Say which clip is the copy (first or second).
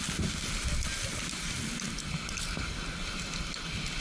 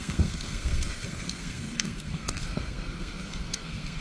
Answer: second